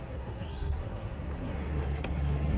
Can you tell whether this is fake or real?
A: fake